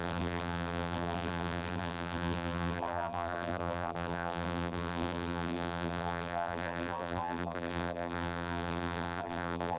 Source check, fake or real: fake